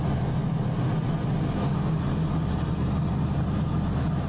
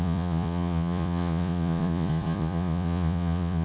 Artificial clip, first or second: second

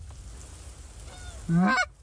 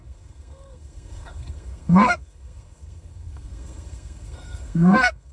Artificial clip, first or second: second